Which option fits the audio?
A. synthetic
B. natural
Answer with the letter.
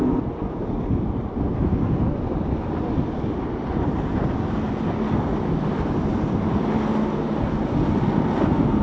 B